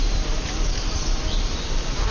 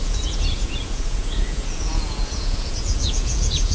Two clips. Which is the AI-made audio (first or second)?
second